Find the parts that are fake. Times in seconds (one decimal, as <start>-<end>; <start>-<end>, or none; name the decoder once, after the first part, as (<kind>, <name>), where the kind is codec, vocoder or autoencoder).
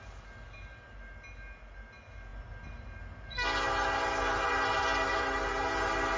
none